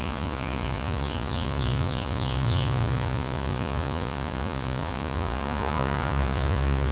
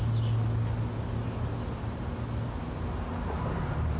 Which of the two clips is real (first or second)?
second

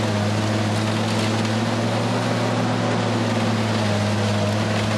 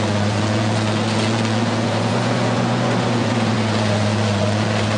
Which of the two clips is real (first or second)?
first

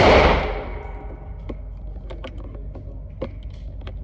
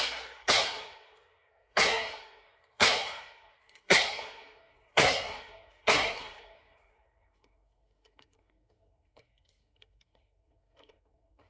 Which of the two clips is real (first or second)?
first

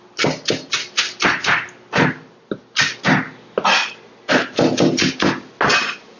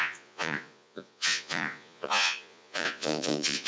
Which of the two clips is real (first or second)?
first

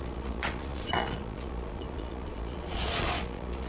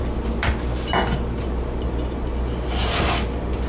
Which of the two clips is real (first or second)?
second